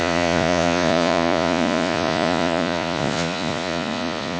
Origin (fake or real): fake